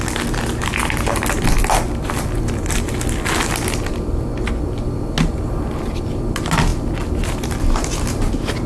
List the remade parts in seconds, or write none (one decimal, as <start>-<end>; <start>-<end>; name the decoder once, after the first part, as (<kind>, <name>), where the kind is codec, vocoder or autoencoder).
none